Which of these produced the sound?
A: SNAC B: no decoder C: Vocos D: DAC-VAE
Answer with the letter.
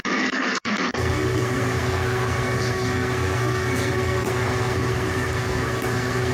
A